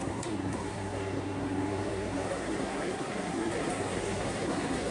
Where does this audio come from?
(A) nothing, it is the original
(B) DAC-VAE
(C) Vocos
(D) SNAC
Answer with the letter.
D